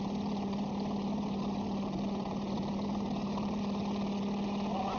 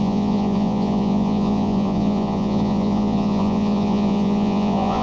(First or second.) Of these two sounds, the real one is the first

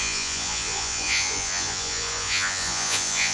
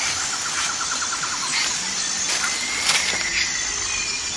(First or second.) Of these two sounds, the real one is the second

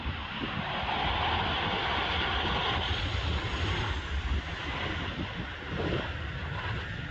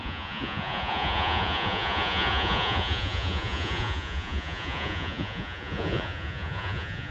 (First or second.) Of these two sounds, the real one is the first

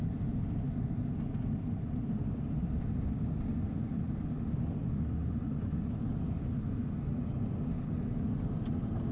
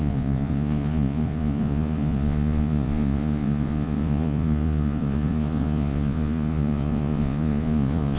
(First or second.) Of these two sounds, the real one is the first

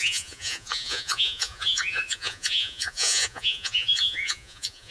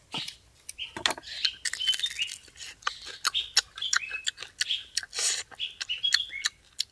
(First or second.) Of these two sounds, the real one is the second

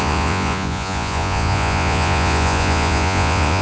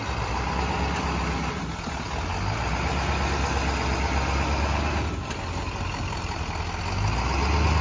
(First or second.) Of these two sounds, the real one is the second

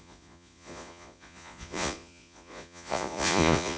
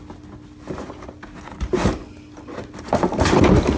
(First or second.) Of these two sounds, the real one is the second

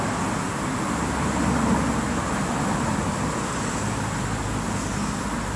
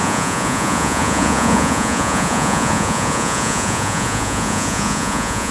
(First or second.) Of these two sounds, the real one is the first